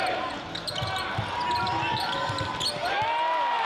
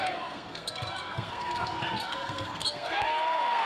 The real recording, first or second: first